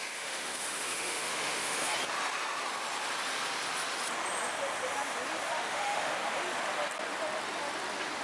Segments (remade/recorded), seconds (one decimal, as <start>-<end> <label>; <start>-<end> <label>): 0.0-1.9 remade; 1.9-5.5 recorded; 5.5-6.1 remade; 6.1-8.2 recorded

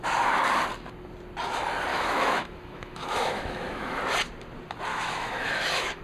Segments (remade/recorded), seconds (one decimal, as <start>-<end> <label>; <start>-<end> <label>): 0.0-1.9 recorded; 1.9-4.0 remade; 4.0-4.9 recorded; 4.9-6.0 remade

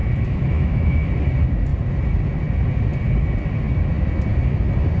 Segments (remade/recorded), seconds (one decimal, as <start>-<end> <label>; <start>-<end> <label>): 0.0-1.1 remade; 1.1-5.0 recorded